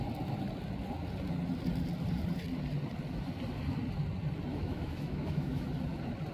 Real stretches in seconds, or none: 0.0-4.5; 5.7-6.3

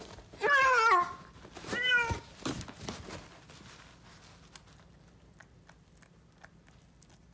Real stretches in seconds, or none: 0.0-7.3

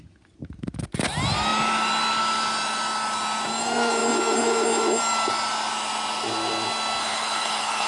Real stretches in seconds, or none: 0.0-7.0